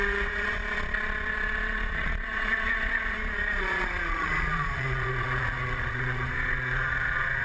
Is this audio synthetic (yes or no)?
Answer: yes